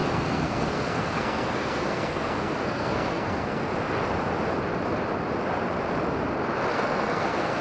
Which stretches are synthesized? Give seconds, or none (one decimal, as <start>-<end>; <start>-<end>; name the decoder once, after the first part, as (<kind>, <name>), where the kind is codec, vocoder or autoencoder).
0.0-3.7 (codec, SNAC); 6.7-7.6